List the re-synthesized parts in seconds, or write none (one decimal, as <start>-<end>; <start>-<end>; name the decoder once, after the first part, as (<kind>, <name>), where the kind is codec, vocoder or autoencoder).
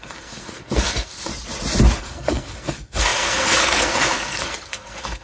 0.0-1.3 (codec, SNAC); 2.0-5.2